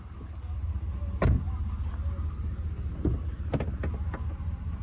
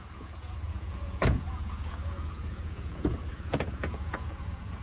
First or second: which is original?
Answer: first